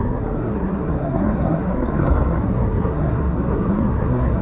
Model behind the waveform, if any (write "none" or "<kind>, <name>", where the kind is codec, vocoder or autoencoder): codec, SNAC